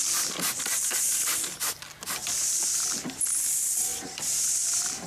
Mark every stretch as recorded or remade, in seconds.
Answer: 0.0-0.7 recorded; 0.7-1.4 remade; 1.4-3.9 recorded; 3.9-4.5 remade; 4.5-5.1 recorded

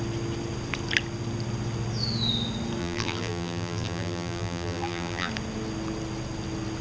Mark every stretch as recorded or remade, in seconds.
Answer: 0.0-2.8 recorded; 2.8-5.3 remade; 5.3-6.8 recorded

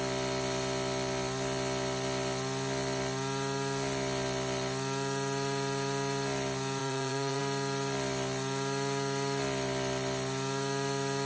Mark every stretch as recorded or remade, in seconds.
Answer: 0.0-6.8 recorded; 6.8-7.4 remade; 7.4-11.3 recorded

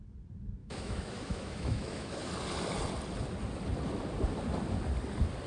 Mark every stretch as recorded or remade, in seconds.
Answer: 0.0-0.6 recorded; 0.6-2.3 remade; 2.3-5.5 recorded

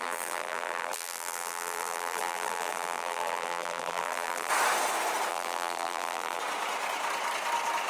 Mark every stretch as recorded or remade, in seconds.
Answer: 0.0-4.5 remade; 4.5-5.3 recorded; 5.3-6.4 remade; 6.4-7.9 recorded